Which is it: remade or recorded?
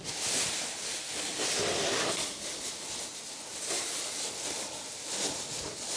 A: recorded